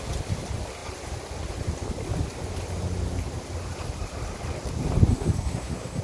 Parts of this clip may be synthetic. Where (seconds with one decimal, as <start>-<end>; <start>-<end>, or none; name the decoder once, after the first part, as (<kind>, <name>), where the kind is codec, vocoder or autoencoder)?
5.1-6.0 (codec, SNAC)